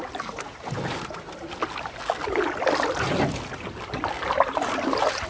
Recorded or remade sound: recorded